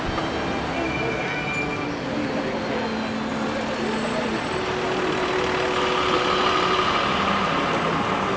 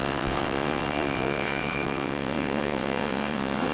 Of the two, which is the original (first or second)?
first